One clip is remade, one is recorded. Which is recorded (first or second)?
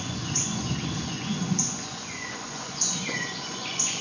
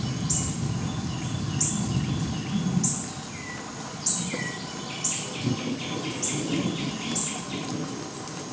second